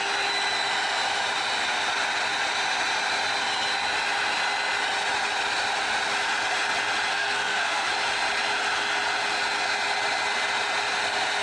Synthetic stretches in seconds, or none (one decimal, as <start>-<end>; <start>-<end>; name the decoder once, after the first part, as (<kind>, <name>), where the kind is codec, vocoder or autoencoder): 7.1-7.9 (codec, SNAC)